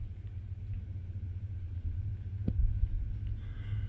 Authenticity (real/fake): real